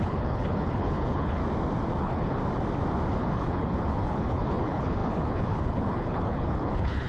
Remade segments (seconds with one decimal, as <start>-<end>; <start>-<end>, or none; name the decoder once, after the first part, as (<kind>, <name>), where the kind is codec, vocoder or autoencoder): 0.0-1.4 (codec, HILCodec); 2.0-2.4; 3.1-7.1

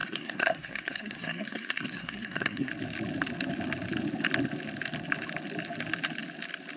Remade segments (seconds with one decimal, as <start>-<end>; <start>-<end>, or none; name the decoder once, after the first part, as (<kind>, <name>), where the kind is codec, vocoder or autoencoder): 0.0-2.7 (codec, SNAC)